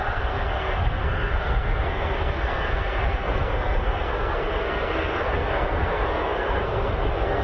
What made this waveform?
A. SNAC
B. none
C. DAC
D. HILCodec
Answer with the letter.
A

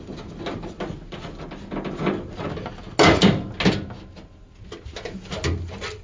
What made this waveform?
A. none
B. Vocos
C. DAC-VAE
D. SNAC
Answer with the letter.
A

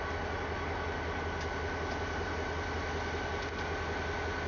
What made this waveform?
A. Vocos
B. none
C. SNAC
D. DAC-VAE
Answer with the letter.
B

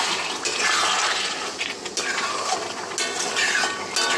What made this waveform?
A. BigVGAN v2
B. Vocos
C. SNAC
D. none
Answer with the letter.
D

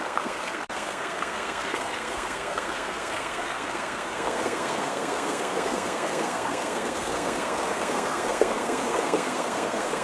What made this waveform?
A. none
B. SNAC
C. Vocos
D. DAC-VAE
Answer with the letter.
B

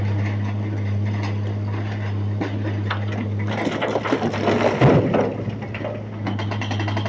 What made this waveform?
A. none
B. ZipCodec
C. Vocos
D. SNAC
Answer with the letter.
A